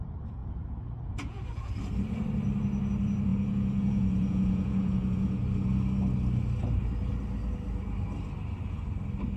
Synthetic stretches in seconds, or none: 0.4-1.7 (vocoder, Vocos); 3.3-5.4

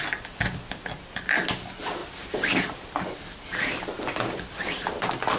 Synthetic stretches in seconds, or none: none

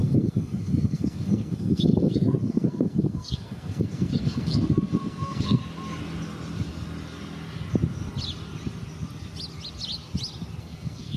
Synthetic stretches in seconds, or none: 0.0-5.6 (codec, SNAC); 10.6-11.2

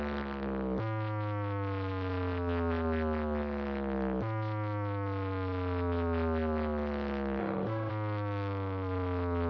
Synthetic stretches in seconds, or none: 7.4-7.9 (autoencoder, DAC-VAE)

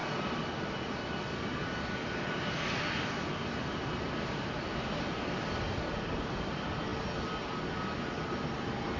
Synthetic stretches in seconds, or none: none

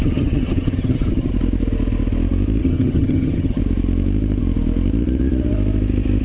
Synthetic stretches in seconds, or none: 0.0-1.3 (vocoder, HiFi-GAN); 2.6-3.6